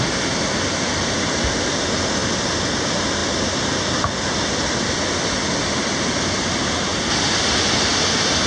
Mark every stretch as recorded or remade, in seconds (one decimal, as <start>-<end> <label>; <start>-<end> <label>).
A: 0.0-8.5 recorded